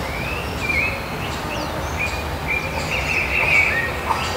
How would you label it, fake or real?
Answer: real